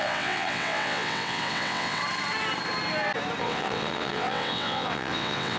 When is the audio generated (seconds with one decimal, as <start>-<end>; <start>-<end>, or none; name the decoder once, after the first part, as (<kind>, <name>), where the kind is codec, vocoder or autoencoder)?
0.0-2.0 (vocoder, WaveNeXt); 3.4-5.6